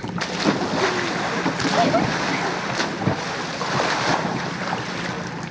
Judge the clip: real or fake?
real